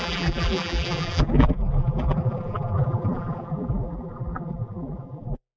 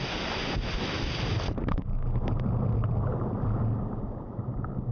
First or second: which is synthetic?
first